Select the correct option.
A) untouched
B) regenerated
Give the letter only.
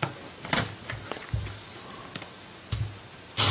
A